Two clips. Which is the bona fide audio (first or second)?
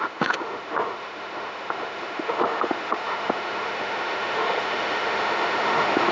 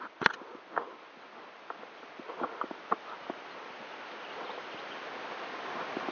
second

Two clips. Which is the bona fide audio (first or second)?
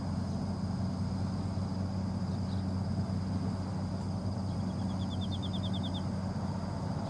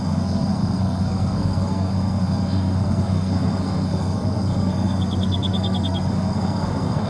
first